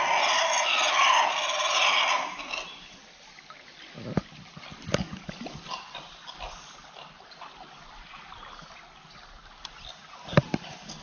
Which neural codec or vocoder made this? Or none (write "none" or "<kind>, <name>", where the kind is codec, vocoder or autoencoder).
none